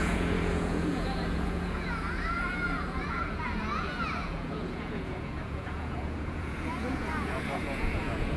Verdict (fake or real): fake